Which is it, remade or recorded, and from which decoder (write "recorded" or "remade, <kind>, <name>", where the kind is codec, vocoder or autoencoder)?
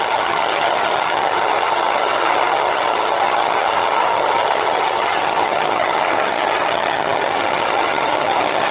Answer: remade, vocoder, HiFi-GAN